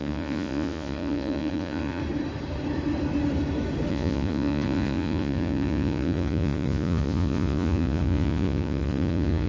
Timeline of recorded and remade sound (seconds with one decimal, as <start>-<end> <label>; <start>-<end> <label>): 0.0-2.0 remade; 2.0-3.9 recorded; 3.9-9.5 remade